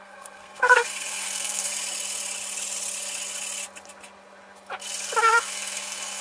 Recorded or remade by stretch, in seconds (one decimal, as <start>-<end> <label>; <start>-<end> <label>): 0.0-1.7 remade; 1.7-5.2 recorded; 5.2-6.2 remade